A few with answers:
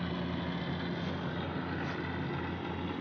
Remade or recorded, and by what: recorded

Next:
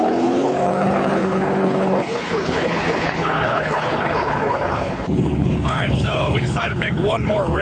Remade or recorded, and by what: remade, codec, HILCodec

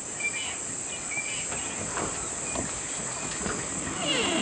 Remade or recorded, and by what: recorded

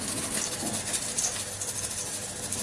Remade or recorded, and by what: recorded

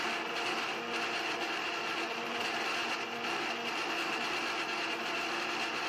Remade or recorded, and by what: recorded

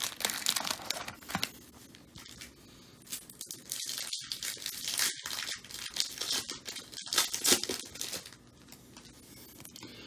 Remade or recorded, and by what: recorded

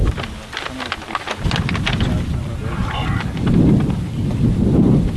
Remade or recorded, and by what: recorded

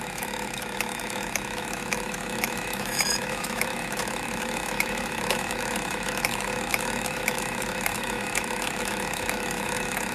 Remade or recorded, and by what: remade, autoencoder, DAC-VAE